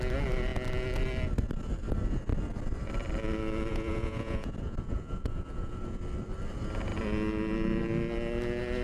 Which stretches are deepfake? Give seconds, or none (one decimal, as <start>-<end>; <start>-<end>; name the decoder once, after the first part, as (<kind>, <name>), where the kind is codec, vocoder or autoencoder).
3.7-6.0 (vocoder, Vocos)